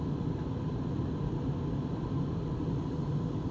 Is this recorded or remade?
recorded